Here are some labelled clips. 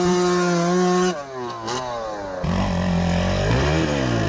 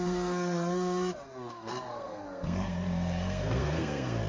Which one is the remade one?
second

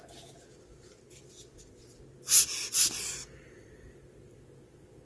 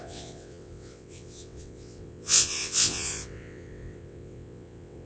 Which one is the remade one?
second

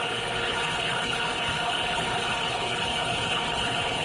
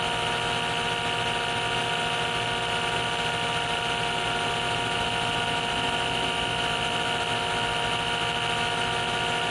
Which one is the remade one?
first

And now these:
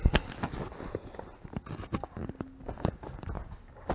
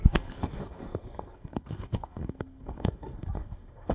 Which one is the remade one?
second